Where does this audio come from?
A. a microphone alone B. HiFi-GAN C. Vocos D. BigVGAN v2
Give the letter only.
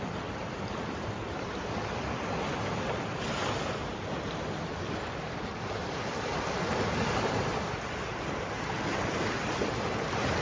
A